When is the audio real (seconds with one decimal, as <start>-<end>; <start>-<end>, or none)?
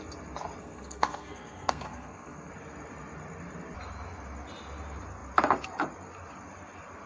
0.0-0.6; 2.5-7.1